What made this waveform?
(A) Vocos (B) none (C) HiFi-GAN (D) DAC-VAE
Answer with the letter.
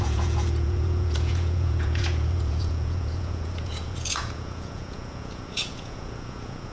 A